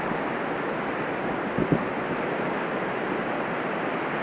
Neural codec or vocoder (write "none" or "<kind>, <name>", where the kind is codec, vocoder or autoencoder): none